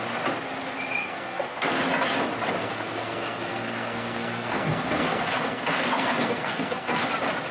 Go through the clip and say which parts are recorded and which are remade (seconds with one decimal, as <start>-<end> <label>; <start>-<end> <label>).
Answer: 0.0-1.0 recorded; 1.0-1.7 remade; 1.7-2.6 recorded; 2.6-7.1 remade; 7.1-7.5 recorded